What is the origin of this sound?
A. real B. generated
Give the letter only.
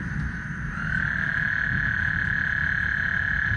A